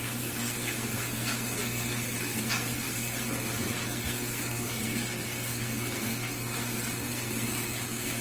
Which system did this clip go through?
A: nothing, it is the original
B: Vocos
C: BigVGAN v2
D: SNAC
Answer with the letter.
D